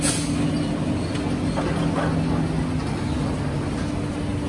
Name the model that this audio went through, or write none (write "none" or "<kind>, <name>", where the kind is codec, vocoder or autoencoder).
none